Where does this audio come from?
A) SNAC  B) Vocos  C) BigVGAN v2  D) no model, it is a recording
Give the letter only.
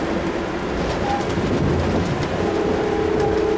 D